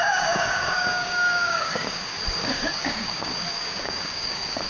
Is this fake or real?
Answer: fake